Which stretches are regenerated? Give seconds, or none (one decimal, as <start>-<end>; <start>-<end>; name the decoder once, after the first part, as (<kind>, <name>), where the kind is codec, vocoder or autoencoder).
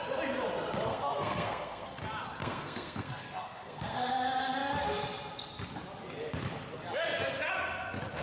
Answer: 0.9-2.0 (codec, SNAC); 2.4-4.1